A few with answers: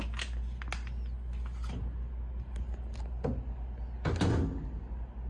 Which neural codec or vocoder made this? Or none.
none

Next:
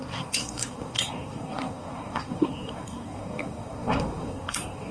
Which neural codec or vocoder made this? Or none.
codec, SNAC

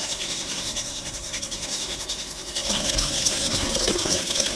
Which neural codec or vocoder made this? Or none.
codec, SNAC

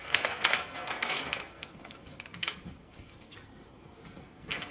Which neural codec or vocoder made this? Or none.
codec, SNAC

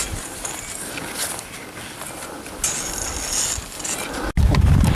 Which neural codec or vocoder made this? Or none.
none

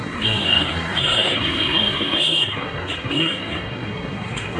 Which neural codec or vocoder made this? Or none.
codec, SNAC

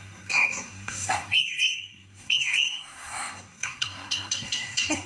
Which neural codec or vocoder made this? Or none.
codec, SNAC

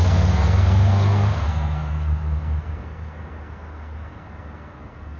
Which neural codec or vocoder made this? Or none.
codec, SNAC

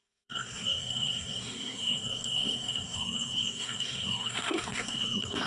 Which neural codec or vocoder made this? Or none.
codec, SNAC